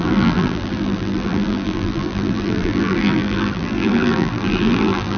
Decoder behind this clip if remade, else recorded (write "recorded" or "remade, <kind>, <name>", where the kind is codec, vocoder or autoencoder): remade, vocoder, BigVGAN v2